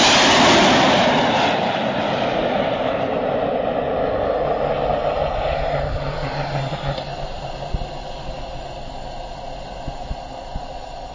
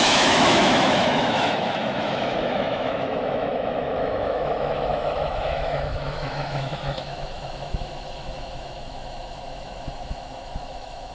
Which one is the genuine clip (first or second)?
first